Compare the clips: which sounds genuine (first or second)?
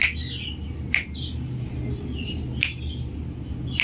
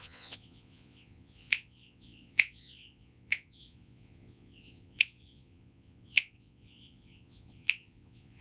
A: first